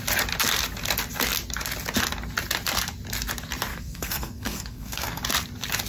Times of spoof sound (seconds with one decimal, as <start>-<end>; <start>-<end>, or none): 3.7-5.2